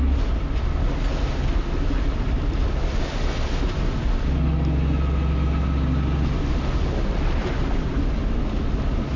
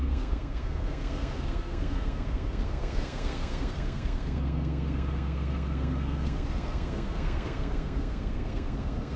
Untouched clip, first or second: first